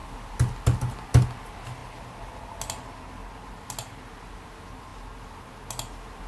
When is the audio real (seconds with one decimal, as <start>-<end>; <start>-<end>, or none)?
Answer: 0.0-6.3